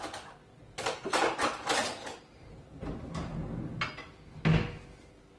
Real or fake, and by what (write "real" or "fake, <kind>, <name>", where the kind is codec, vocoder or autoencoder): real